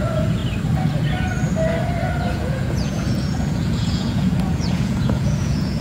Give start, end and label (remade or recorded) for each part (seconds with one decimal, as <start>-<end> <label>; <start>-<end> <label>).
0.0-0.4 remade; 0.4-2.3 recorded; 2.3-5.8 remade